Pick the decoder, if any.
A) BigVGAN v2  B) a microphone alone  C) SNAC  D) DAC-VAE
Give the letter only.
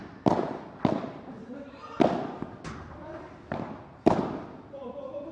B